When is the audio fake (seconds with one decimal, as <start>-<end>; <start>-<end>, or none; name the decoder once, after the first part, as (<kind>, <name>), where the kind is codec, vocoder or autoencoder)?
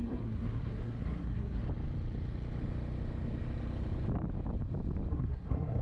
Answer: 0.0-1.6 (codec, SNAC); 5.1-5.8